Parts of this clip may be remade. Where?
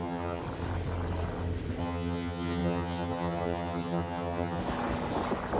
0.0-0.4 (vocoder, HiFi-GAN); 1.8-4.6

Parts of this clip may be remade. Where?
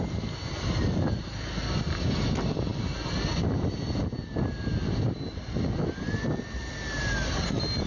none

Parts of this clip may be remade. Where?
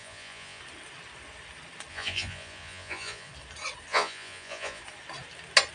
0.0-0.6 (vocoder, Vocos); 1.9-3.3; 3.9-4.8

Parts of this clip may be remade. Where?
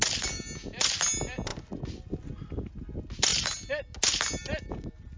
none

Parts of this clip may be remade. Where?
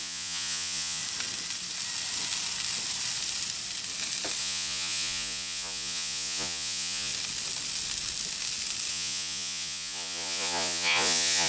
0.0-1.0 (vocoder, Vocos); 4.4-7.1; 8.9-11.5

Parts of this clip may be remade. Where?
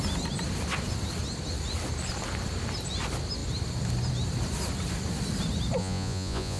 5.8-6.6 (vocoder, Vocos)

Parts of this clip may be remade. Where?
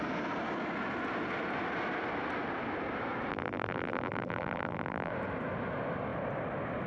3.3-5.1 (vocoder, BigVGAN v2)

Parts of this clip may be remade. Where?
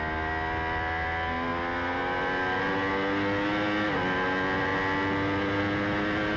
none